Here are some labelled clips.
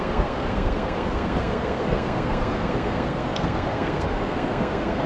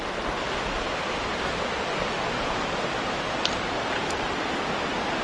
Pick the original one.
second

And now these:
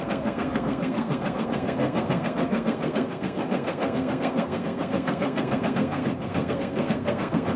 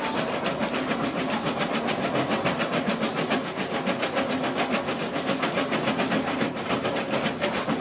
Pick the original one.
second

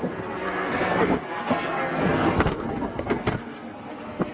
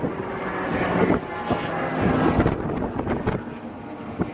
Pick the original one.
second